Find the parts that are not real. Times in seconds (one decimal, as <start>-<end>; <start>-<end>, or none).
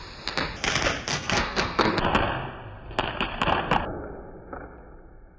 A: 1.1-1.9